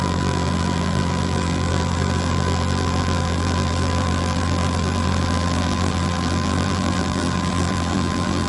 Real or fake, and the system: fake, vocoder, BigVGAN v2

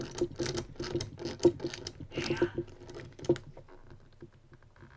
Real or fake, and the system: real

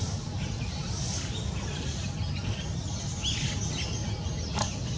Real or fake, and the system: real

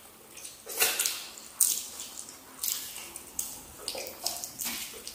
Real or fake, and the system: real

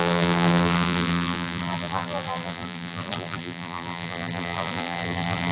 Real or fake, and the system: fake, vocoder, BigVGAN v2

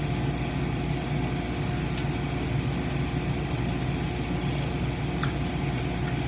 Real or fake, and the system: real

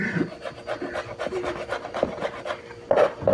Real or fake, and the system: real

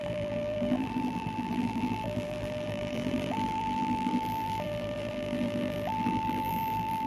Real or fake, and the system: fake, vocoder, BigVGAN v2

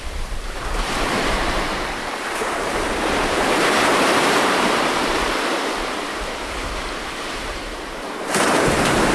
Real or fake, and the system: fake, vocoder, BigVGAN v2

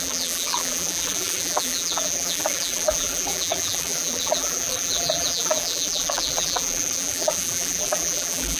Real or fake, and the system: fake, vocoder, BigVGAN v2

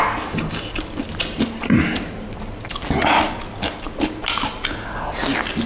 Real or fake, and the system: real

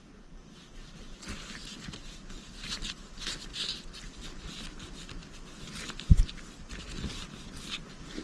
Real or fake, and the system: real